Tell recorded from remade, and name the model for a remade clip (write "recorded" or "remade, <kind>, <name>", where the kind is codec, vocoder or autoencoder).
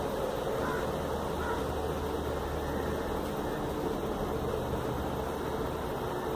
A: recorded